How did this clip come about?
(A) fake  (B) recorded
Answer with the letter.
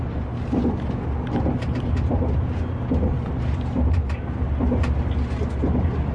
B